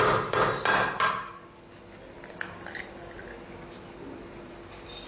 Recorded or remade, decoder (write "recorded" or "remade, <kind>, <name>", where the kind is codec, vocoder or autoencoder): recorded